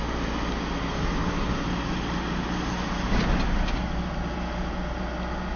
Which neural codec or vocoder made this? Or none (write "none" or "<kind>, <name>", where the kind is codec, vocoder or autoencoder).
none